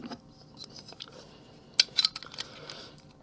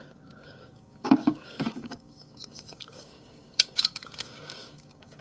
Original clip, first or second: first